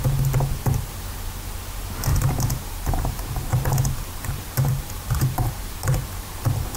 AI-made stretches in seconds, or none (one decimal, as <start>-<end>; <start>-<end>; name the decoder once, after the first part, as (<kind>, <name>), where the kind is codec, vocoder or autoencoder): 2.1-5.5 (vocoder, BigVGAN v2)